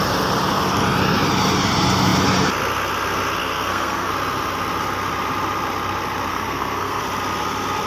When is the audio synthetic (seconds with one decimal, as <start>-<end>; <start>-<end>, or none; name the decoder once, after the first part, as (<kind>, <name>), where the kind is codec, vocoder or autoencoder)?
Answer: 3.4-4.1 (codec, SNAC); 6.3-7.0